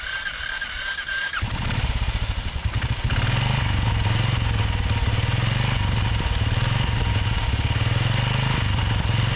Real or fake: real